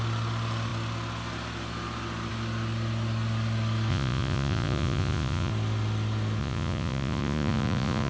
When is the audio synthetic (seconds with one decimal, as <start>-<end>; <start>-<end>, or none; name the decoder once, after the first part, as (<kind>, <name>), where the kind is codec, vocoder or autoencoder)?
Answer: 3.9-5.5 (vocoder, Vocos); 6.4-8.1